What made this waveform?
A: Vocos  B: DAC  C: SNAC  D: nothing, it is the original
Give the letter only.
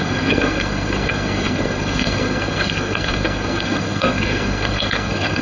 C